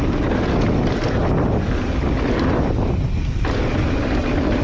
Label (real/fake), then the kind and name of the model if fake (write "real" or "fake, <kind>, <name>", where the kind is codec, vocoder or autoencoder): real